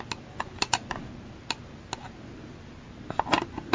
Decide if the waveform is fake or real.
real